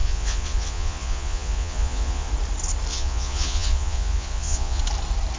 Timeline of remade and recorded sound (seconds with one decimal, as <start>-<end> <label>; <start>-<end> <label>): 0.0-2.3 remade; 2.3-2.9 recorded; 2.9-4.8 remade; 4.8-5.4 recorded